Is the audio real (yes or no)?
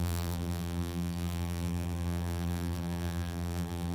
no